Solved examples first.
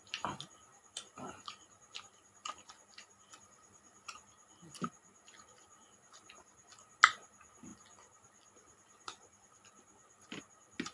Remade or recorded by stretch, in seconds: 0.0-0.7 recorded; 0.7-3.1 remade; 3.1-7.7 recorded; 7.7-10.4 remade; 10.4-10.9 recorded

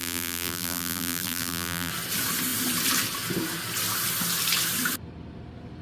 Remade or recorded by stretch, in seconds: 0.0-1.9 remade; 1.9-5.8 recorded

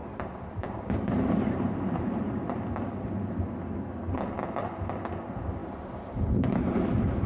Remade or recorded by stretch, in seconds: 0.0-2.3 remade; 2.3-5.6 recorded; 5.6-6.8 remade; 6.8-7.3 recorded

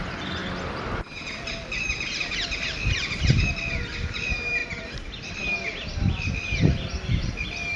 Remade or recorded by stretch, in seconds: 0.0-0.4 remade; 0.4-3.6 recorded; 3.6-7.8 remade

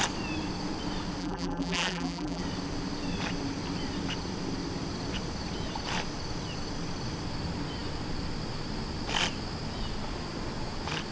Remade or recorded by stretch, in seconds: 0.0-1.2 recorded; 1.2-2.4 remade; 2.4-11.1 recorded

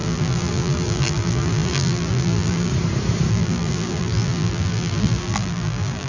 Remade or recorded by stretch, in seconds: 0.0-2.7 remade; 2.7-3.3 recorded; 3.3-6.1 remade

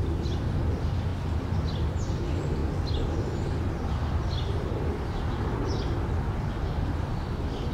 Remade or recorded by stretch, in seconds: 0.0-1.1 recorded; 1.1-1.8 remade; 1.8-7.1 recorded; 7.1-7.7 remade

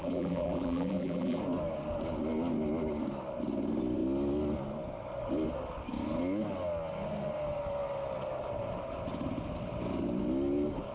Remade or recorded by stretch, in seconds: 0.0-1.4 remade; 1.4-10.9 recorded